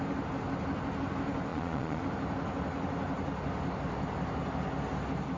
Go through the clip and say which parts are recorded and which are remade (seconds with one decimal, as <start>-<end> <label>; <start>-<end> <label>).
0.0-1.5 recorded; 1.5-2.0 remade; 2.0-5.4 recorded